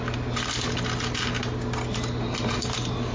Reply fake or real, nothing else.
real